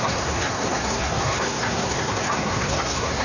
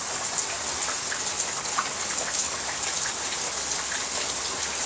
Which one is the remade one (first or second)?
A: first